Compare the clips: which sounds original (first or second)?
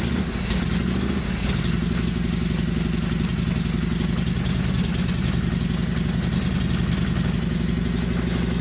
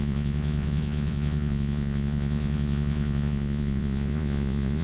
first